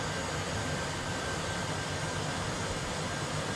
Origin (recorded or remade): recorded